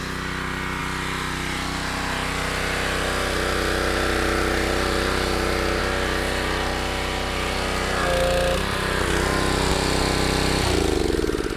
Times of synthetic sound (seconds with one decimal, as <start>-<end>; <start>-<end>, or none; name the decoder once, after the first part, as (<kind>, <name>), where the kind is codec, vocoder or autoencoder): none